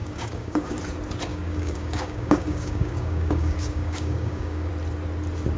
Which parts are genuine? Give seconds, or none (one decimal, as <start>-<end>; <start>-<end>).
0.8-1.3; 4.7-5.6